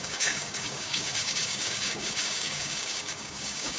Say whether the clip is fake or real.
fake